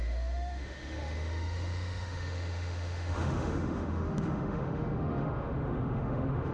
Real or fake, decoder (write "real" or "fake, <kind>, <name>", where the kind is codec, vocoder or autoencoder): fake, autoencoder, DAC-VAE